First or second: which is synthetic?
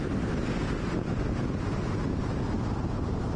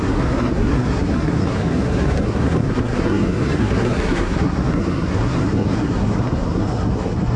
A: second